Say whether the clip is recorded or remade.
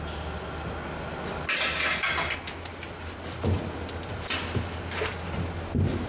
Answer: recorded